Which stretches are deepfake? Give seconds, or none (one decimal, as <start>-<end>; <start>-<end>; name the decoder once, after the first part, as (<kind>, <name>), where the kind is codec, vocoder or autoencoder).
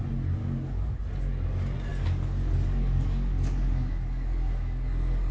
0.4-1.0 (codec, DAC); 1.9-5.3